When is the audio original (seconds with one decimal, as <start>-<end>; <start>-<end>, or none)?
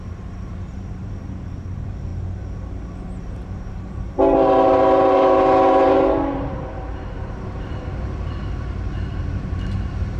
none